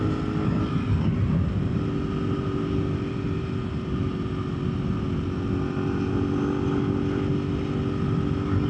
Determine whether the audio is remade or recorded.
recorded